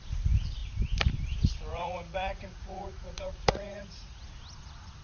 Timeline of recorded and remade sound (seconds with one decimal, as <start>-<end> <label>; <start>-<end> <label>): 0.0-1.7 recorded; 1.7-4.2 remade; 4.2-5.0 recorded